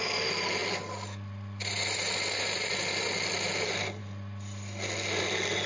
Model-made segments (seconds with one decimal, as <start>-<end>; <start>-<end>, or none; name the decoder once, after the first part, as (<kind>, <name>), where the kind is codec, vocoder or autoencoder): none

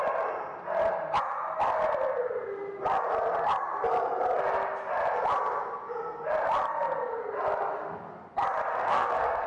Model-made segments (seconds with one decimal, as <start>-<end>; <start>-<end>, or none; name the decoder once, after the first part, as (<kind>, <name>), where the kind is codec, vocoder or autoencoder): 8.7-9.5 (codec, SNAC)

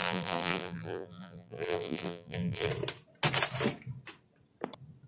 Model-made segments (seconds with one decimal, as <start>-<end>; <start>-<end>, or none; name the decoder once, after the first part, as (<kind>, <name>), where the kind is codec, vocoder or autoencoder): 0.0-2.7 (vocoder, BigVGAN v2)

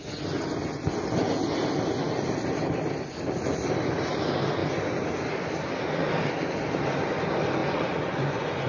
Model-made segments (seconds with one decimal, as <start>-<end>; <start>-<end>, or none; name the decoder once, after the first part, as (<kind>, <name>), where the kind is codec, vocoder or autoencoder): 7.6-8.7 (vocoder, Vocos)

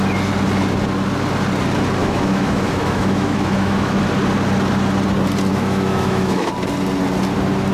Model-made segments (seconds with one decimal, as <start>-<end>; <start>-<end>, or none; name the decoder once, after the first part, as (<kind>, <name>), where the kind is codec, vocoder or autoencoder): 2.0-4.0 (autoencoder, DAC-VAE); 5.5-6.5